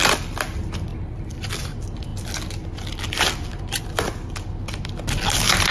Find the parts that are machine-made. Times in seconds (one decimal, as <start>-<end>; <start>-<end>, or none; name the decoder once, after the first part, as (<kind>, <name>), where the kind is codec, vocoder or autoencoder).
0.0-5.7 (vocoder, BigVGAN v2)